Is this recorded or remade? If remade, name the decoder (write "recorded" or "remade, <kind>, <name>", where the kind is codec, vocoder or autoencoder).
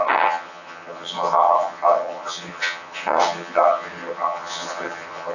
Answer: remade, vocoder, HiFi-GAN